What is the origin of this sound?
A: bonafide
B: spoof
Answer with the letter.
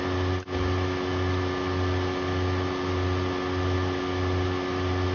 A